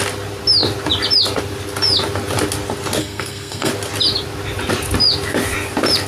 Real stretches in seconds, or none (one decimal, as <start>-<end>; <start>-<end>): 0.0-3.0; 3.7-6.1